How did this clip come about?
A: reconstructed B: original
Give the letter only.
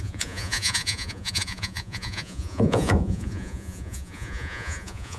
A